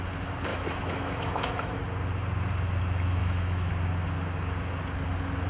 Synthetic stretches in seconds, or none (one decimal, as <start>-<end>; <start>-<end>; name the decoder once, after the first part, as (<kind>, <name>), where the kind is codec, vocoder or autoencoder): 0.5-1.8 (autoencoder, DAC-VAE); 3.2-3.7